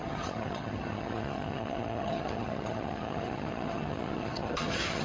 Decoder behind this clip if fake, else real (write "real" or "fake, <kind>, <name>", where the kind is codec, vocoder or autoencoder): fake, vocoder, HiFi-GAN